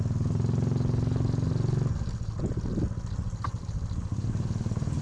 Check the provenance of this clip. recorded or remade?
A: recorded